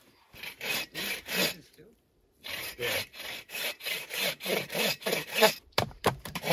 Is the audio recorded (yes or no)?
no